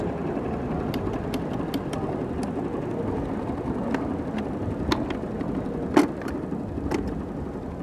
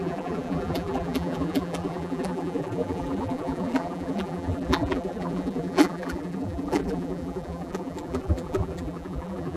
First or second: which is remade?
second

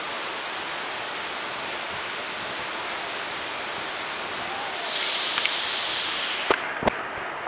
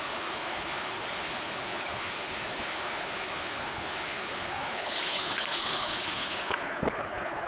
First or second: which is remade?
second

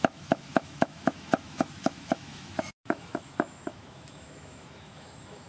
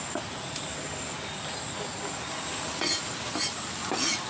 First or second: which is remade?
first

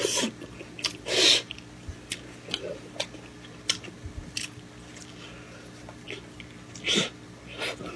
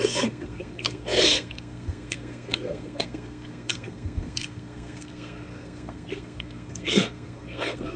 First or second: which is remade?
second